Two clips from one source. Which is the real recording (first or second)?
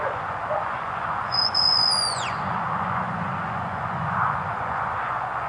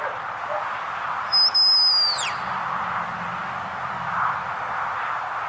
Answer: second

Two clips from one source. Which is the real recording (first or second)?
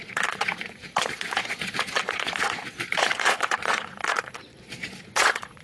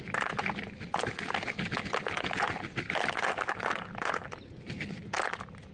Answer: second